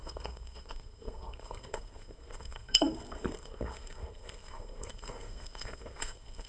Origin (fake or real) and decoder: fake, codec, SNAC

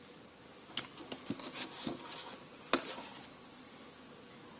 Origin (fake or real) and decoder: real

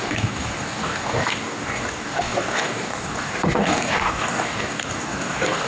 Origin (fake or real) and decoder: fake, codec, DAC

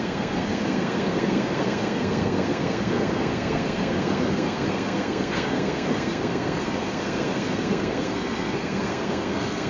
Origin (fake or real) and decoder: fake, codec, SNAC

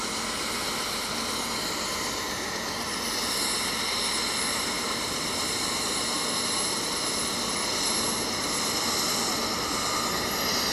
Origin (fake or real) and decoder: real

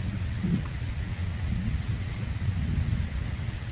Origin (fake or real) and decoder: fake, vocoder, WaveNeXt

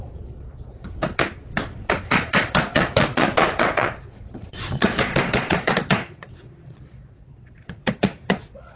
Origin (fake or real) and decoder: fake, vocoder, Vocos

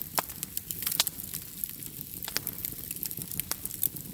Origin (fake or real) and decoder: real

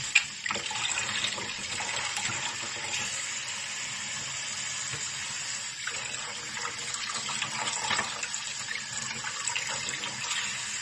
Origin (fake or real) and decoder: real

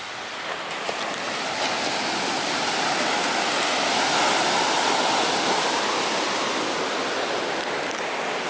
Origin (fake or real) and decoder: real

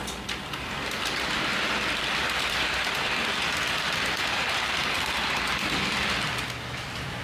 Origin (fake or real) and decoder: real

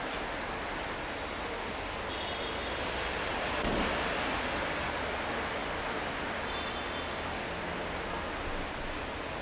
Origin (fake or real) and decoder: real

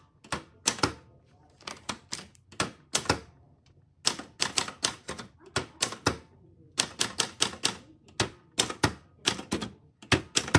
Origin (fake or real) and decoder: real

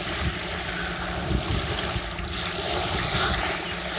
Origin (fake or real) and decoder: real